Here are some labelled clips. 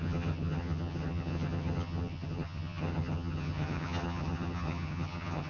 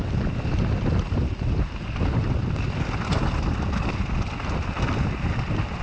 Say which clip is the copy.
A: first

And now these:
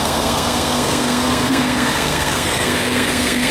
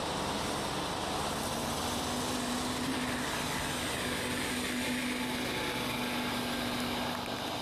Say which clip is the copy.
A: first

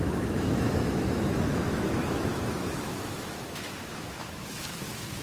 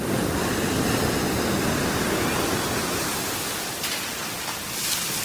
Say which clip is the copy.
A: first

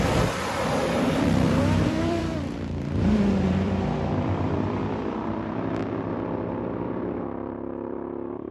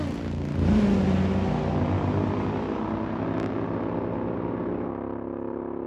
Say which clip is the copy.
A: first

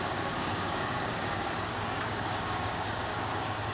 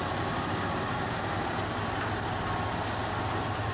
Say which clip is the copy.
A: first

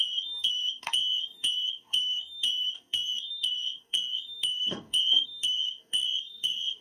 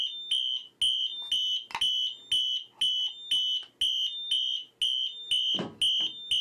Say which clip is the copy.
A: first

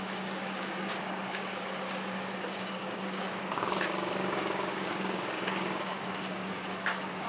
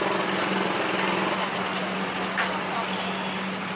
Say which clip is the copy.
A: first